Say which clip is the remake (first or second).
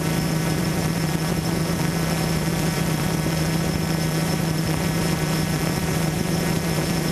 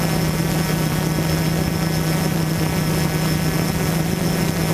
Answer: first